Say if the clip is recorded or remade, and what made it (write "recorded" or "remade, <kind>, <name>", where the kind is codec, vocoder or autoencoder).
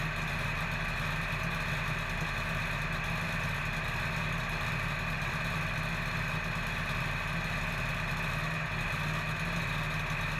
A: recorded